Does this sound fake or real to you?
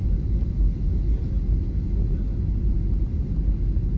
real